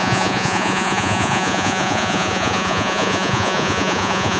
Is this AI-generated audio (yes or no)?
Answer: yes